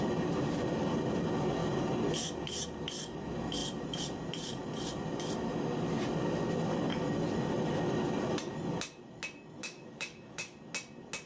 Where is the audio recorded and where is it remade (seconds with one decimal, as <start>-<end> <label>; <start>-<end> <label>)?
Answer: 0.0-9.6 recorded; 9.6-10.6 remade; 10.6-11.3 recorded

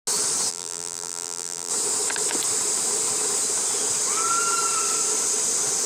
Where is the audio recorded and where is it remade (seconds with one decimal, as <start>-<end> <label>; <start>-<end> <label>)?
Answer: 0.0-0.5 recorded; 0.5-1.7 remade; 1.7-5.9 recorded

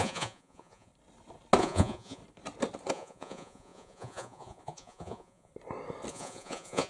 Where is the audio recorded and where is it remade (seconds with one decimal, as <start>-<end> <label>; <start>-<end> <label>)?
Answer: 0.0-0.9 remade; 0.9-1.6 recorded; 1.6-2.2 remade; 2.2-2.9 recorded; 2.9-5.5 remade; 5.5-6.1 recorded; 6.1-6.9 remade

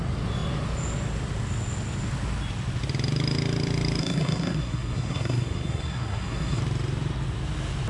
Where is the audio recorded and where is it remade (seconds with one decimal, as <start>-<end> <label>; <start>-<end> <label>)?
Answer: 0.0-4.0 recorded; 4.0-6.6 remade; 6.6-7.9 recorded

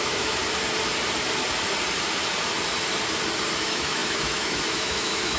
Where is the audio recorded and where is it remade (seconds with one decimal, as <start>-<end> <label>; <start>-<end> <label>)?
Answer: 0.0-0.4 remade; 0.4-3.6 recorded; 3.6-5.4 remade